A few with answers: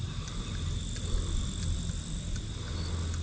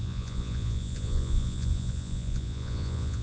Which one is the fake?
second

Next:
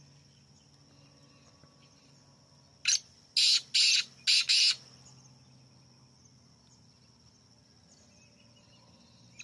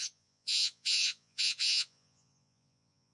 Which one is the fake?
second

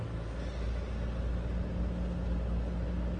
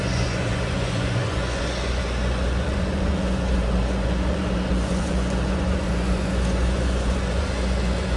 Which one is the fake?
second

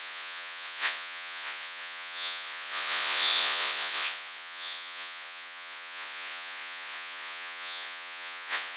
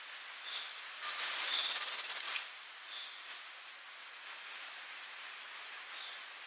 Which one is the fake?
first